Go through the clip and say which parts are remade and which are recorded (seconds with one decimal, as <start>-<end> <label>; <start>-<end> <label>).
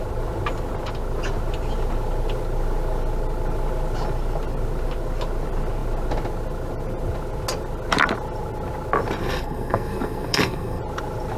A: 0.0-9.2 recorded; 9.2-10.8 remade; 10.8-11.4 recorded